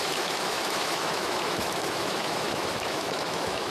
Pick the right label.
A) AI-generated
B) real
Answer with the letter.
A